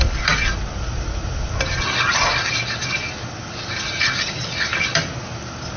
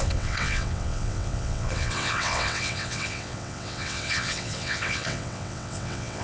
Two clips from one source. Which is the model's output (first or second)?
second